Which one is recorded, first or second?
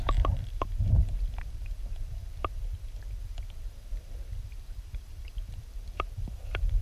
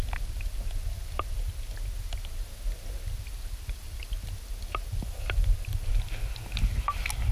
second